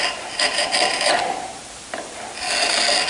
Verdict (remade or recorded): recorded